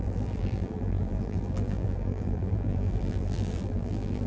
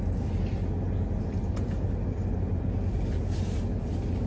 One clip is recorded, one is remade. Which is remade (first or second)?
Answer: first